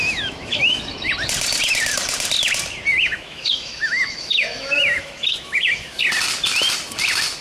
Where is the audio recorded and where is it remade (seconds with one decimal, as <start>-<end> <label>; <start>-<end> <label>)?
0.0-1.1 remade; 1.1-2.9 recorded; 2.9-6.0 remade; 6.0-7.4 recorded